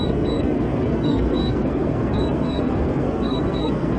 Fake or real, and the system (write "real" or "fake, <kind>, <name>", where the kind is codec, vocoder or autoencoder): fake, codec, SNAC